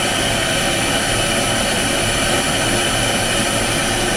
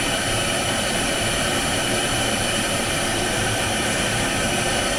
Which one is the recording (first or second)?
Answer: first